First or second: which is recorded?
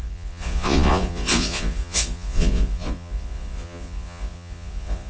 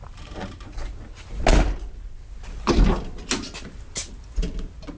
second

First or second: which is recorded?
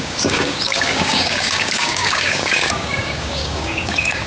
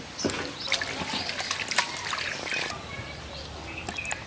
second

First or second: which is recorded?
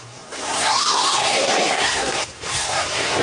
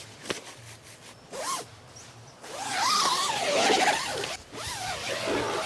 second